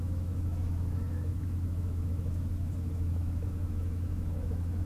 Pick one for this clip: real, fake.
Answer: fake